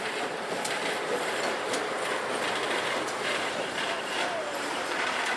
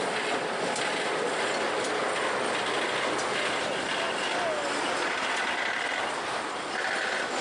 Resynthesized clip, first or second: first